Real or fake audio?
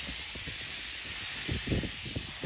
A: real